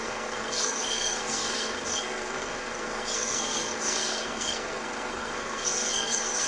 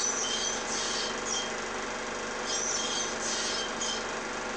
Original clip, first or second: second